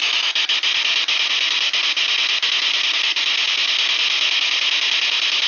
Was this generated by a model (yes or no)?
no